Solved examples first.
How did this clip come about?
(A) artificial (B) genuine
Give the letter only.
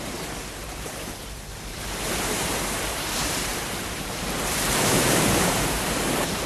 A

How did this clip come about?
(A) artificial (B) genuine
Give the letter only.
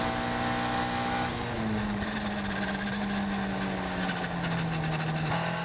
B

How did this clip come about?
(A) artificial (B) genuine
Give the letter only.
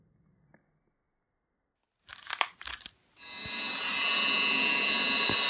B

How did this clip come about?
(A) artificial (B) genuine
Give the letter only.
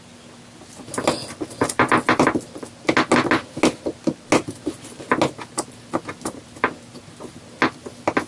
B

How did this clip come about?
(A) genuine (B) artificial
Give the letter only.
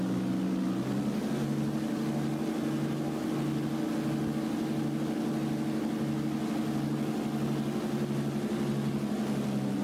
A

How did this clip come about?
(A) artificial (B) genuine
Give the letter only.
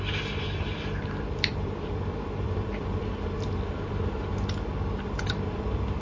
A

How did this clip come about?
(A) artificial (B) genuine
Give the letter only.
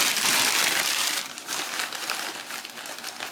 A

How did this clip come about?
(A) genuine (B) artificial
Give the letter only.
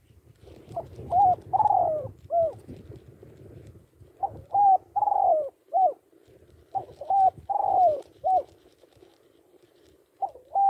B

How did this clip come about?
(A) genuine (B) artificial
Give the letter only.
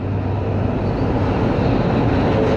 A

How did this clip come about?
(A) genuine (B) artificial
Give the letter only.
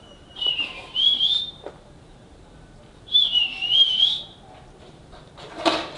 B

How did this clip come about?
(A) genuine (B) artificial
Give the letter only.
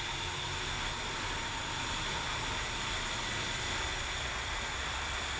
A